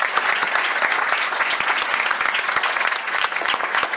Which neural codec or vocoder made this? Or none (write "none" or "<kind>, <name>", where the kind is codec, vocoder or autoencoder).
vocoder, Vocos